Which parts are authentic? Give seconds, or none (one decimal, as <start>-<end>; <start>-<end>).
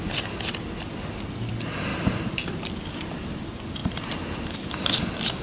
0.0-1.9; 2.4-3.8; 4.5-5.4